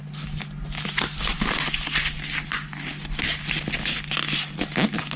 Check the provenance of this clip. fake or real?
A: real